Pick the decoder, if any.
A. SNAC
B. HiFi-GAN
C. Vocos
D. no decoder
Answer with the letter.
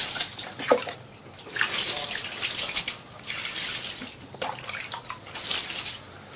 D